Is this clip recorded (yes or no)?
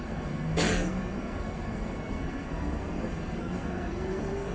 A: no